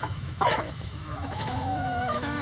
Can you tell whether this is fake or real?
fake